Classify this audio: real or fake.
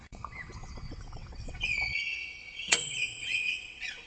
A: fake